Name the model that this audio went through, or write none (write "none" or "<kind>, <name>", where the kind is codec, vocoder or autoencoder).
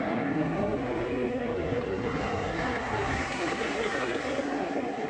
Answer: codec, SNAC